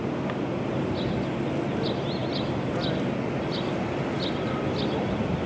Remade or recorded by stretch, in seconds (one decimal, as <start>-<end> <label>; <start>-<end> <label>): 0.0-5.5 recorded

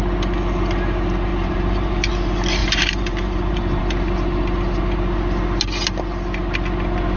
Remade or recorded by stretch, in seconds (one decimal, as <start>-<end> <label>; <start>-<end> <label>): 0.0-1.3 recorded; 1.3-2.1 remade; 2.1-2.6 recorded; 2.6-3.8 remade; 3.8-7.2 recorded

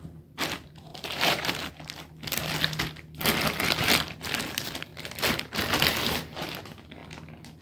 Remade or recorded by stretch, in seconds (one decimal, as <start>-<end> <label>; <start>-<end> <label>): 0.0-0.9 recorded; 0.9-1.7 remade; 1.7-7.6 recorded

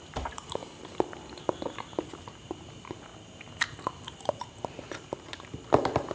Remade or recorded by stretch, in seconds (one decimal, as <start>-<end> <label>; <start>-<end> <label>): 0.0-0.6 remade; 0.6-2.1 recorded; 2.1-3.1 remade; 3.1-4.3 recorded; 4.3-6.1 remade

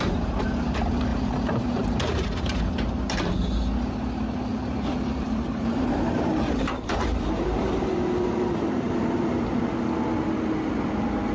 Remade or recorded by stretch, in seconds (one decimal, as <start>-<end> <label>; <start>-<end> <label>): 0.0-1.1 recorded; 1.1-2.6 remade; 2.6-4.5 recorded; 4.5-9.6 remade; 9.6-11.3 recorded

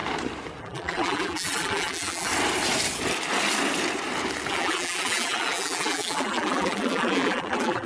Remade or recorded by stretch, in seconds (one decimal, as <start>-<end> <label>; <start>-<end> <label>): 0.0-0.6 recorded; 0.6-2.3 remade; 2.3-4.5 recorded; 4.5-7.9 remade

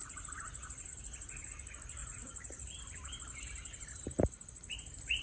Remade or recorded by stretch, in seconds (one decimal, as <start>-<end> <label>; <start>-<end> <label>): 0.0-1.0 remade; 1.0-2.0 recorded; 2.0-5.2 remade